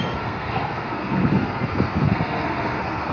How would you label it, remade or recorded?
remade